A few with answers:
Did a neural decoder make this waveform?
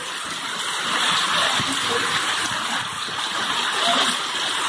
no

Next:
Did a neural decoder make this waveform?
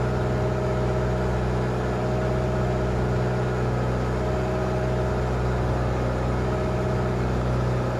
no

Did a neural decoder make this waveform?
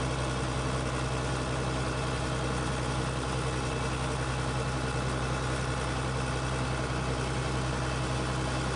no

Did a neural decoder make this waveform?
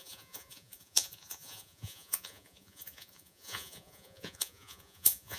yes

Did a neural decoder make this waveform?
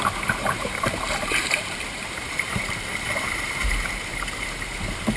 yes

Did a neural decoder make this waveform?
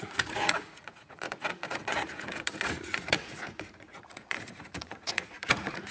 yes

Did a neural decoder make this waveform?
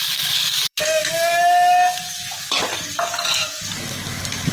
yes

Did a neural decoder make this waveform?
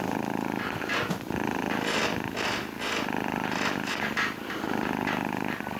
no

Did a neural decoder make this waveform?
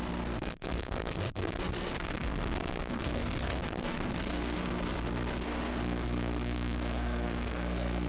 yes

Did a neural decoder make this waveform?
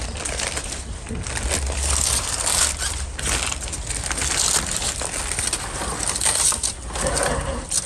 no